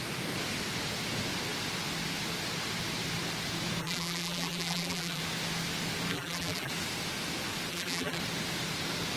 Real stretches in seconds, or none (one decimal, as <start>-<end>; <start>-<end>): 0.0-3.8; 5.2-6.1; 6.7-7.7; 8.2-9.2